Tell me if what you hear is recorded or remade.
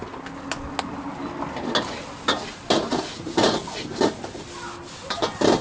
recorded